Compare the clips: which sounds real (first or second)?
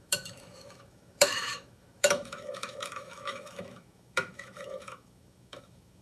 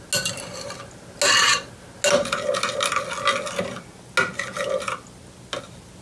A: second